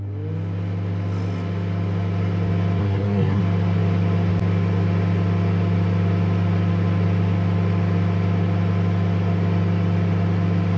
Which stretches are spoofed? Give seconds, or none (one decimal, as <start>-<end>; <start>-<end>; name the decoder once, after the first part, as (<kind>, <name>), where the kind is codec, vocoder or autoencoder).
2.8-3.4 (codec, SNAC)